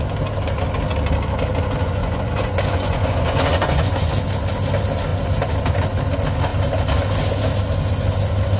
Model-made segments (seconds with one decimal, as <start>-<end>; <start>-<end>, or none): 1.8-4.1